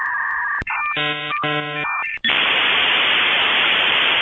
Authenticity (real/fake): fake